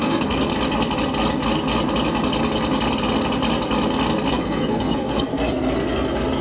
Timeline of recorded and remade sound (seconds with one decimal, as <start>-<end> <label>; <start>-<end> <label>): 0.0-0.5 remade; 0.5-4.3 recorded; 4.3-5.3 remade; 5.3-6.4 recorded